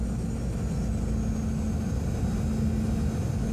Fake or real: real